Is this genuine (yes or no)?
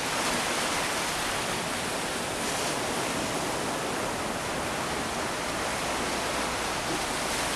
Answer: yes